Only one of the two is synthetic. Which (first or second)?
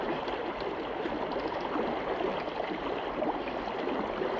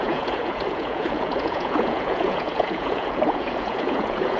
second